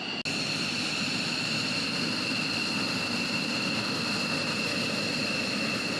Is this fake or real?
real